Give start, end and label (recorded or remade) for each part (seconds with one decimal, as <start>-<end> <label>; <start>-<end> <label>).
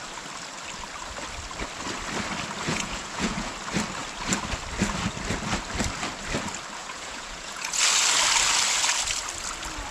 0.0-2.7 recorded; 2.7-3.5 remade; 3.5-6.8 recorded; 6.8-7.8 remade; 7.8-9.9 recorded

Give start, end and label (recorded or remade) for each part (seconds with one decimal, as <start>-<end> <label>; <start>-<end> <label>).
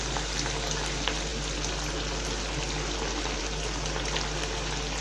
0.0-5.0 recorded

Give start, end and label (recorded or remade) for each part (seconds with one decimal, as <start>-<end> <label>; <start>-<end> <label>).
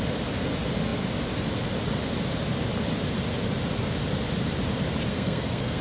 0.0-5.1 recorded; 5.1-5.8 remade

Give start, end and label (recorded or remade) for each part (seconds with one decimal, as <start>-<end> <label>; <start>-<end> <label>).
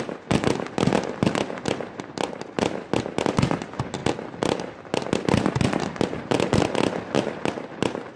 0.0-8.2 recorded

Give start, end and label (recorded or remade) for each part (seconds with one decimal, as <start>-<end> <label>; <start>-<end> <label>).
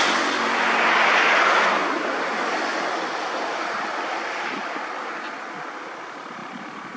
0.0-7.0 recorded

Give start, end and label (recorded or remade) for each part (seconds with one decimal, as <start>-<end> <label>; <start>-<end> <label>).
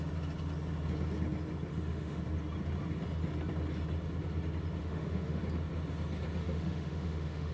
0.0-1.7 recorded; 1.7-2.2 remade; 2.2-4.8 recorded; 4.8-5.4 remade; 5.4-6.4 recorded; 6.4-7.5 remade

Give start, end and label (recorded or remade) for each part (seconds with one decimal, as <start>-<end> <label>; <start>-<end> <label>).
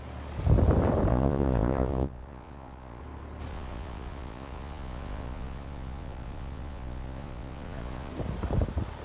0.0-1.1 recorded; 1.1-3.0 remade; 3.0-3.5 recorded; 3.5-8.1 remade; 8.1-9.0 recorded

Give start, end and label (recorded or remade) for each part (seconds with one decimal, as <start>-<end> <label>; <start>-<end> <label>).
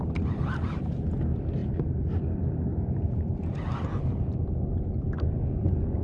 0.0-1.6 recorded; 1.6-2.1 remade; 2.1-2.7 recorded; 2.7-3.6 remade; 3.6-6.0 recorded